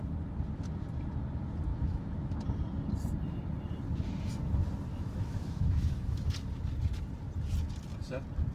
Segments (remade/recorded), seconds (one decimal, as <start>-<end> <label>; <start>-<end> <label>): 0.0-1.7 recorded; 1.7-2.4 remade; 2.4-4.9 recorded; 4.9-6.3 remade; 6.3-8.5 recorded